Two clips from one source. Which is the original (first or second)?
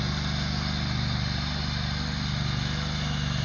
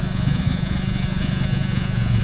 first